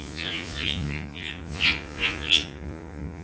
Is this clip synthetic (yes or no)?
yes